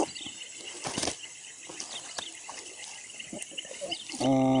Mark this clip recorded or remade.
recorded